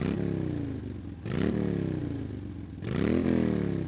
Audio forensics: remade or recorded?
recorded